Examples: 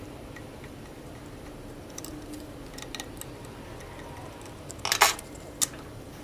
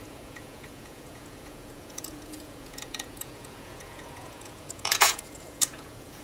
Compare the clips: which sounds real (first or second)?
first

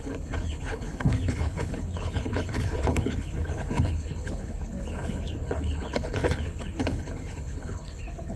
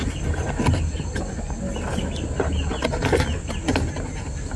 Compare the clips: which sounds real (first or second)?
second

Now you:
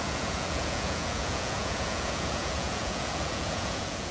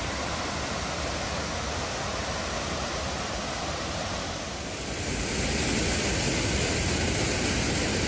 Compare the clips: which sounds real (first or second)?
second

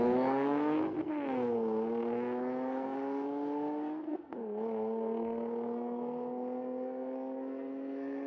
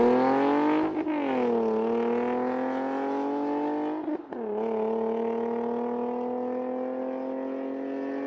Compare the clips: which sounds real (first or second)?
second